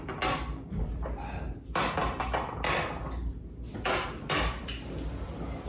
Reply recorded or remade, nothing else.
recorded